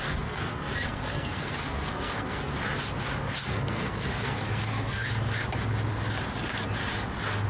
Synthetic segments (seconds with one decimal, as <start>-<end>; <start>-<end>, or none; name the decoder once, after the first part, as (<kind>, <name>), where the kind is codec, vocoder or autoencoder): 0.0-2.5 (codec, SNAC); 3.5-5.0